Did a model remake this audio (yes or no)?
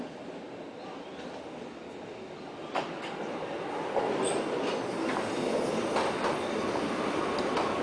no